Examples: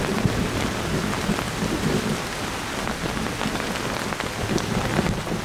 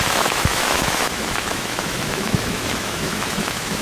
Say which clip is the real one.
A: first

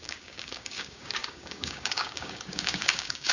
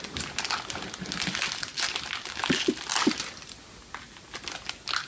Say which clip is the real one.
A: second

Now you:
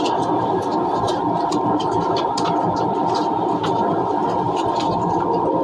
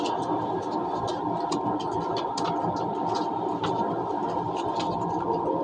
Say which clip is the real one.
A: second